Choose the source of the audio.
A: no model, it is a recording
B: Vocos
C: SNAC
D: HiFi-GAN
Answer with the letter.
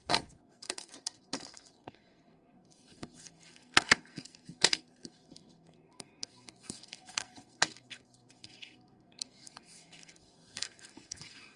C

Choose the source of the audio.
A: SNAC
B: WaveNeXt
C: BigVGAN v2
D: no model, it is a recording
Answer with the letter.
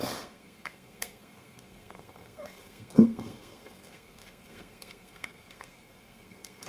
A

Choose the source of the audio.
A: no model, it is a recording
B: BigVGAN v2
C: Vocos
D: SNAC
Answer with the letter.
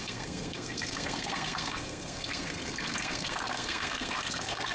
D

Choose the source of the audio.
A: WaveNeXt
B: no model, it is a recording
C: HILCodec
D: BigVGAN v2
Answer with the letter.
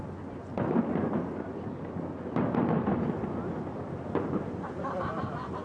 B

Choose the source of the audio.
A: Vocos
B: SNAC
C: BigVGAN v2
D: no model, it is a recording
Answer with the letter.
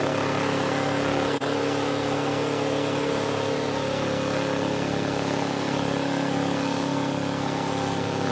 B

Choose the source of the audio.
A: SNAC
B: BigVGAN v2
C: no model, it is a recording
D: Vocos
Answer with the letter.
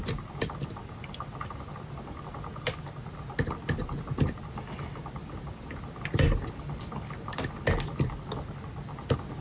C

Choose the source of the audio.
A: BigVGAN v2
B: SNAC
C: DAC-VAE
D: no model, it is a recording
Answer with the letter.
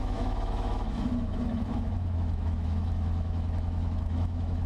C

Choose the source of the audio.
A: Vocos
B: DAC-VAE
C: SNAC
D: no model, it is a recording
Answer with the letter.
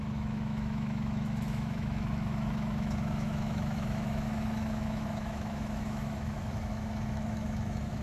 B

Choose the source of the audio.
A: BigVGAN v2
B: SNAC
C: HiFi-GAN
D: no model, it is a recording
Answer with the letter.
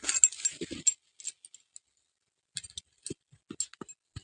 D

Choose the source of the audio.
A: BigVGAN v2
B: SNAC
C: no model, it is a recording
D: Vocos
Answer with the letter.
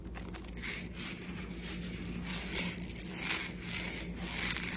C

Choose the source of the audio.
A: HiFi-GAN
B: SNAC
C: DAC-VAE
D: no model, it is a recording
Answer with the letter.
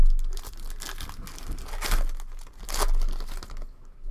D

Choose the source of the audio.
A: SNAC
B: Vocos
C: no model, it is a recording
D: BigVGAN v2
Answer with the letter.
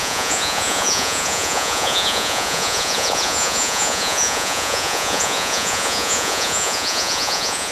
B